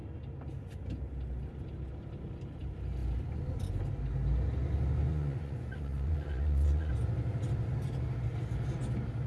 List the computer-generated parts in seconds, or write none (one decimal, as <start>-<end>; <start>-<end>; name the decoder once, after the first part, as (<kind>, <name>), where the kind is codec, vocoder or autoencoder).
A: 5.1-6.9 (vocoder, Vocos)